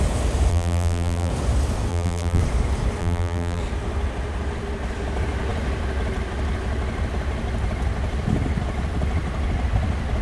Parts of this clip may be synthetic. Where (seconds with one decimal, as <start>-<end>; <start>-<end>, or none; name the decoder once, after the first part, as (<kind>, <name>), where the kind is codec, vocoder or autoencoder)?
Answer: 0.5-1.3 (vocoder, BigVGAN v2); 1.9-2.4; 3.0-3.6